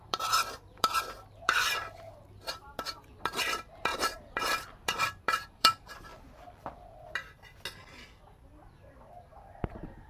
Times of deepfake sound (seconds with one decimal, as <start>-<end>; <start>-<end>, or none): 0.0-6.1; 9.3-10.1